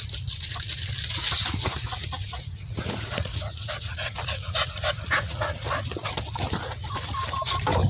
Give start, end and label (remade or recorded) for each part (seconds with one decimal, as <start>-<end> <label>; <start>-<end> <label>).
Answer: 0.0-1.4 recorded; 1.4-5.6 remade; 5.6-7.9 recorded